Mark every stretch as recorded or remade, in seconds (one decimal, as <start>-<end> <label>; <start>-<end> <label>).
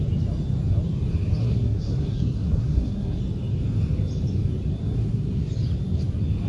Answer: 0.0-1.4 recorded; 1.4-3.2 remade; 3.2-5.0 recorded; 5.0-5.5 remade; 5.5-6.5 recorded